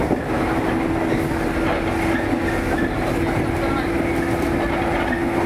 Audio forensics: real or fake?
real